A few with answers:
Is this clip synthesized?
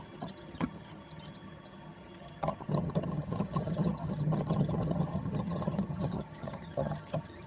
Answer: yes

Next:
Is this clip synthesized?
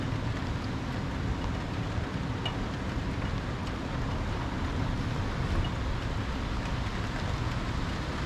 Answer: no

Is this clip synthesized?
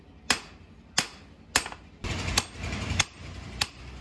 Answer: no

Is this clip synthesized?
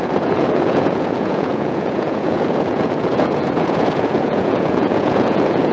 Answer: yes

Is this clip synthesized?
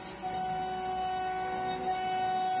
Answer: no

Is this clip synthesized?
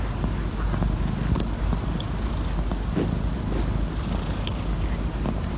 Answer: no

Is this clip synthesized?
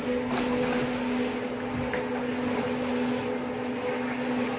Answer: no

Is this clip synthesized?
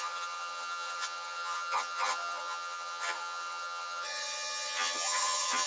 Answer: yes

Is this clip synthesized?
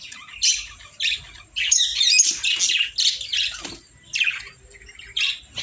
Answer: no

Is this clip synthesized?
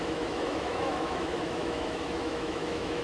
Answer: yes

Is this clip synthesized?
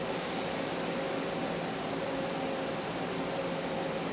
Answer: no